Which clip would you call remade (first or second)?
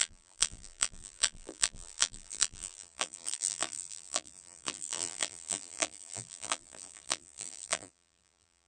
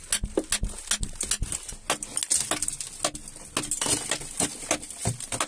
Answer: first